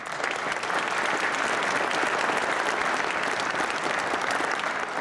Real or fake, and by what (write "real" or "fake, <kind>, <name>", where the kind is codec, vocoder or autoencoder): real